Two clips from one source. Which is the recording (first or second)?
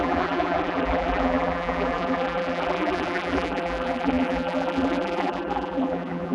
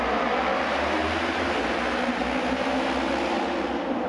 second